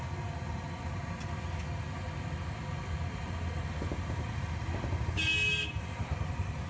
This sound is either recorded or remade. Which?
recorded